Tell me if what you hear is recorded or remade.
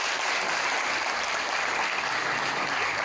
recorded